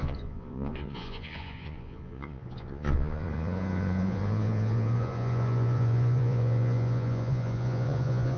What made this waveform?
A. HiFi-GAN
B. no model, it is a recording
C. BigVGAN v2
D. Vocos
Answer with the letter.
D